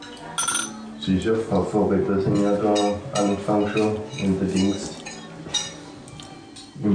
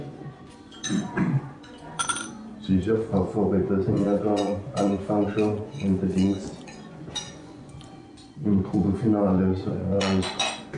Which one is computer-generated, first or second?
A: second